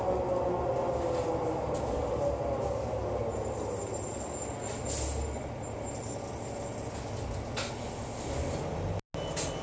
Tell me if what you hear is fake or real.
real